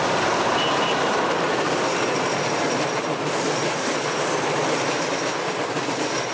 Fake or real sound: real